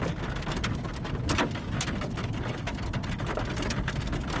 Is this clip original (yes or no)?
yes